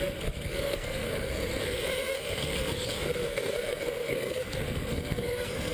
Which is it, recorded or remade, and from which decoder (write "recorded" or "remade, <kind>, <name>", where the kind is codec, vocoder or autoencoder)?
remade, codec, SNAC